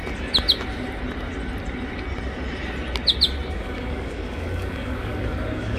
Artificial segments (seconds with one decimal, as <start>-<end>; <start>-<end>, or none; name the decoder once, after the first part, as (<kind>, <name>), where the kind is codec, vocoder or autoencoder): 3.5-5.8 (codec, DAC)

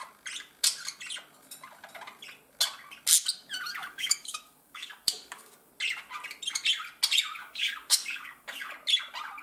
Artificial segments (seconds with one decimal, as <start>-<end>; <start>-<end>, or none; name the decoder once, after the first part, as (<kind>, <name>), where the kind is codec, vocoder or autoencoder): 3.8-5.7 (codec, DAC); 7.4-8.7

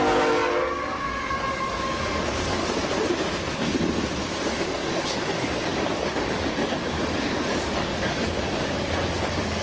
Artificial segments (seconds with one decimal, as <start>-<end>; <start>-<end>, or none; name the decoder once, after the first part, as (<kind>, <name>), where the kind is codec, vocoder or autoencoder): 0.0-2.6 (codec, DAC); 4.4-9.6

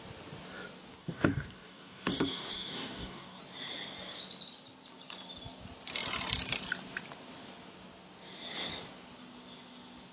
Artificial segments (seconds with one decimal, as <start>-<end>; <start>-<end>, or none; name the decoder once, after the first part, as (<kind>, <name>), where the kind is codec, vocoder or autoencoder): 1.0-3.4 (codec, DAC)

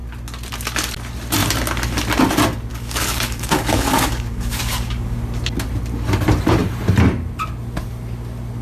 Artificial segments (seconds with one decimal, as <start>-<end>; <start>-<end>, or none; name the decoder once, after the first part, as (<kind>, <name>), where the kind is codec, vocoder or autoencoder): 2.7-5.2 (codec, DAC)

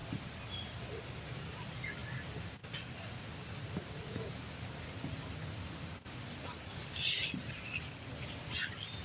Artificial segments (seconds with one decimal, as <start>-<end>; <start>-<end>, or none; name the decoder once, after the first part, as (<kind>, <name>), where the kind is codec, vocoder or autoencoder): none

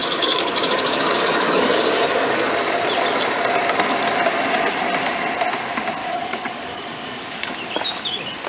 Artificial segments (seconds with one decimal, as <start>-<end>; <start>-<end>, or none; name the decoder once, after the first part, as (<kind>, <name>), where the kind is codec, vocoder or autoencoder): 0.0-2.5 (codec, DAC); 6.0-7.5